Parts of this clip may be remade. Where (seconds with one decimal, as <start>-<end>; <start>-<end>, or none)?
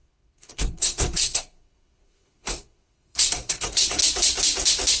0.0-4.0